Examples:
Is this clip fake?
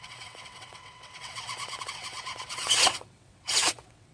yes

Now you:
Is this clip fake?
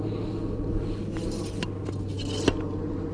no